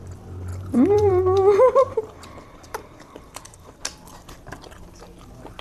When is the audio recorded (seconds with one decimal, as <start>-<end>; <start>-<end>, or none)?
0.0-0.5; 1.2-1.8; 3.6-5.6